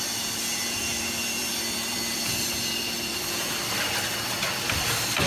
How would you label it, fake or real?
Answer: fake